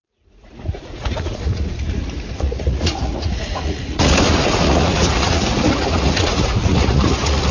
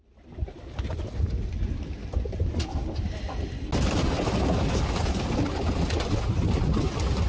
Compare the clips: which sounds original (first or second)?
second